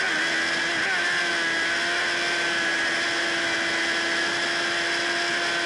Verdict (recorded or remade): recorded